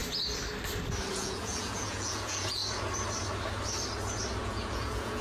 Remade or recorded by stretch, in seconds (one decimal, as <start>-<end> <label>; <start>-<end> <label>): 0.0-1.1 recorded; 1.1-2.6 remade; 2.6-4.4 recorded; 4.4-5.2 remade